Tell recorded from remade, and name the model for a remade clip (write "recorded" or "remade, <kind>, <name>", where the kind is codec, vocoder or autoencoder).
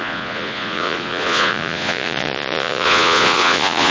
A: remade, vocoder, Vocos